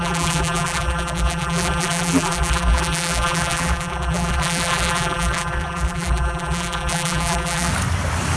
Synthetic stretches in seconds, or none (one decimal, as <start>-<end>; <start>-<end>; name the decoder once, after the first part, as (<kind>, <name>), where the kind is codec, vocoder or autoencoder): 0.0-7.7 (vocoder, BigVGAN v2)